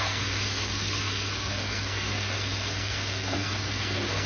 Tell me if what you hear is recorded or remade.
remade